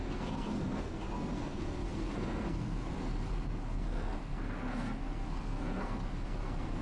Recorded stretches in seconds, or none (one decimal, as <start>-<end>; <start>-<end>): none